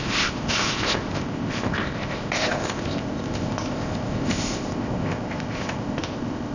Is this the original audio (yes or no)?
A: no